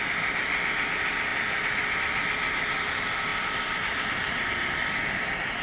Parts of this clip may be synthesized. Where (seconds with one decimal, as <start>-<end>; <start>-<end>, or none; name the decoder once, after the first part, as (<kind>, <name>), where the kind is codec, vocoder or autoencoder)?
1.3-2.0 (vocoder, BigVGAN v2); 3.3-4.9